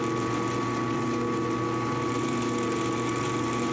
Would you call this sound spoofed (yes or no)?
no